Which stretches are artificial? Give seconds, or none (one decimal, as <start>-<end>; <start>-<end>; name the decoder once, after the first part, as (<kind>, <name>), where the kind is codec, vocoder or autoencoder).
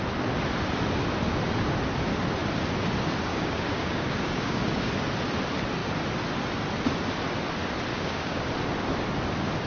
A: 3.3-4.9 (codec, DAC); 7.9-8.5